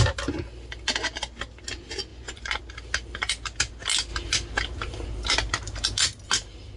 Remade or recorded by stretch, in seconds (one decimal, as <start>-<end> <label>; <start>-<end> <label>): 0.0-2.1 recorded; 2.1-2.6 remade; 2.6-6.8 recorded